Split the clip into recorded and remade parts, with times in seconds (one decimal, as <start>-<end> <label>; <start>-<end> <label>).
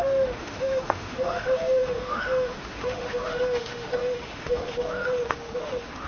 0.0-6.1 remade